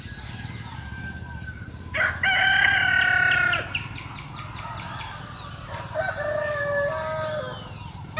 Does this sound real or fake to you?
real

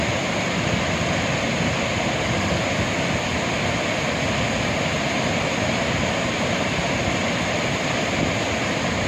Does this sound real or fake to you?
real